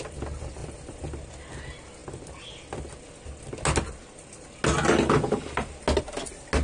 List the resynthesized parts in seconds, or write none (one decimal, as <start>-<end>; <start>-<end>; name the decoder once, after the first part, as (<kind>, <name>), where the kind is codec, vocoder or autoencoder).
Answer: none